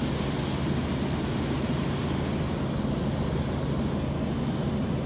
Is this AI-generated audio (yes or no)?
no